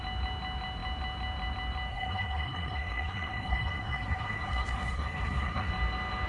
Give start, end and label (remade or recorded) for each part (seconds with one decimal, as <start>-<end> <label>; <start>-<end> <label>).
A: 0.0-1.9 recorded; 1.9-5.7 remade; 5.7-6.3 recorded